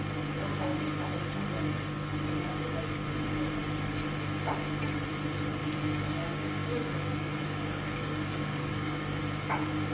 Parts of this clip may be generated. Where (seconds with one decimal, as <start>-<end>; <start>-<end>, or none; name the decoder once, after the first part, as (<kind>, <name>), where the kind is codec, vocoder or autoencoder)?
5.6-9.2 (codec, DAC)